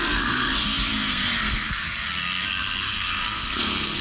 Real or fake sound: fake